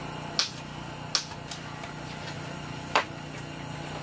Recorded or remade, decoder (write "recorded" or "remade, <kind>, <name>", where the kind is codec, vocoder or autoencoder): recorded